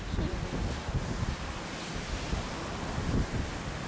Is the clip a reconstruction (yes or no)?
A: no